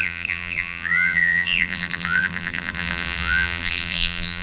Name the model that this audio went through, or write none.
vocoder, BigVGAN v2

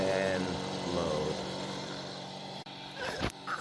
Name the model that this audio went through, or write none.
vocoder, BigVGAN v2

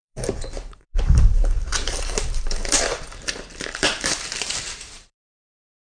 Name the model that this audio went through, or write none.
vocoder, BigVGAN v2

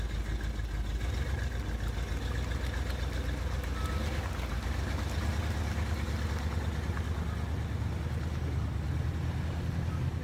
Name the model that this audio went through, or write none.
none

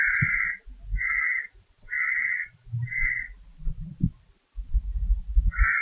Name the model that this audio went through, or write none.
none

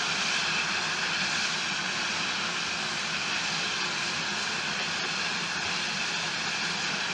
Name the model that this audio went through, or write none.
vocoder, BigVGAN v2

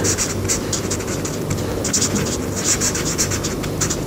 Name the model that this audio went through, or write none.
none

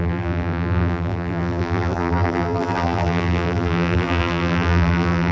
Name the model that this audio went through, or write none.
vocoder, BigVGAN v2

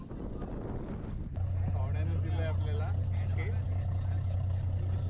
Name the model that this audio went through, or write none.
none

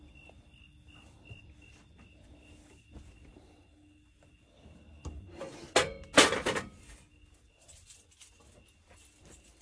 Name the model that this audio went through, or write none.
none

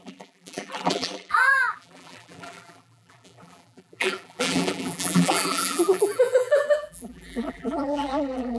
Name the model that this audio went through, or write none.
vocoder, BigVGAN v2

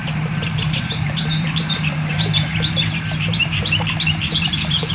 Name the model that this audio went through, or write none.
vocoder, BigVGAN v2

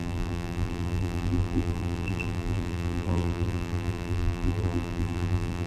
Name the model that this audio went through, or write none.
vocoder, BigVGAN v2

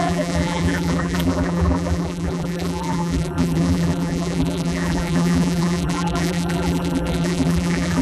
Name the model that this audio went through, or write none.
vocoder, BigVGAN v2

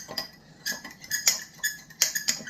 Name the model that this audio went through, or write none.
vocoder, BigVGAN v2